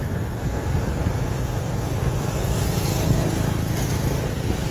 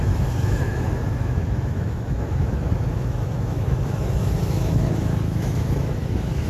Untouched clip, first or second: first